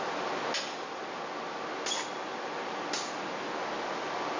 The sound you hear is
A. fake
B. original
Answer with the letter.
B